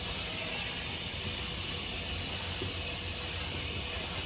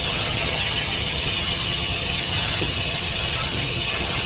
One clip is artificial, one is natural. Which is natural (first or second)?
first